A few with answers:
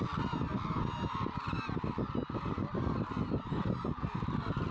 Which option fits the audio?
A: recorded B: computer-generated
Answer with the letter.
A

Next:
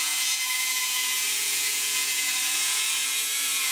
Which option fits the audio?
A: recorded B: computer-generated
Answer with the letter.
B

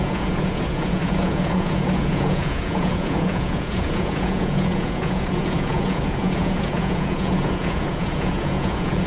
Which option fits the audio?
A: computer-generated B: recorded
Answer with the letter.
A